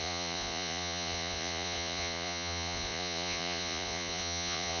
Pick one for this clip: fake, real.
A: fake